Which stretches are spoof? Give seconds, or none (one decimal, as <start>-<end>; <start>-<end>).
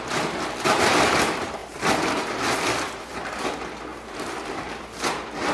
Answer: 0.0-5.5